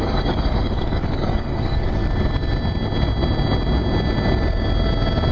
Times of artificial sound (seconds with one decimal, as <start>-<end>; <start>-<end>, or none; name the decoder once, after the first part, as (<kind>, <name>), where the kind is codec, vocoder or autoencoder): 0.0-2.0 (codec, DAC)